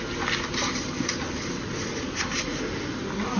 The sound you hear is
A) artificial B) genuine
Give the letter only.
B